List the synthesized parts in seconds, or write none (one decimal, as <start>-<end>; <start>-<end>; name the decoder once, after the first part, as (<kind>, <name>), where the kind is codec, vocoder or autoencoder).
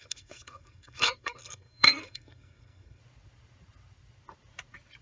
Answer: 0.0-3.0 (codec, SNAC)